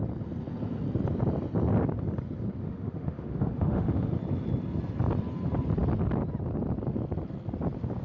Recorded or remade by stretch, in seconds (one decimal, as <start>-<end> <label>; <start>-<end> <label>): 0.0-2.6 recorded; 2.6-4.2 remade; 4.2-8.0 recorded